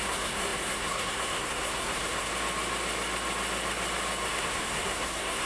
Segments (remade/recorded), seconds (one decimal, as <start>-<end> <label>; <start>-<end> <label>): 0.0-2.3 remade; 2.3-4.3 recorded; 4.3-5.5 remade